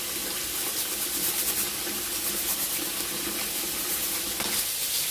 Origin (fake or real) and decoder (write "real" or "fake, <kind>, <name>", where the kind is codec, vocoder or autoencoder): real